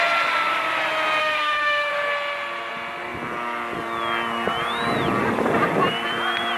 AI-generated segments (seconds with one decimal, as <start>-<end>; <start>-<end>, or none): 1.2-1.9